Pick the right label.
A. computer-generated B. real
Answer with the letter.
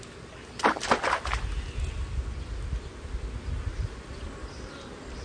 B